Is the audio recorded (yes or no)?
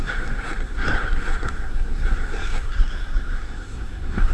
no